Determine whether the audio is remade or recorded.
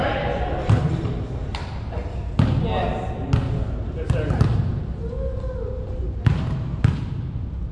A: recorded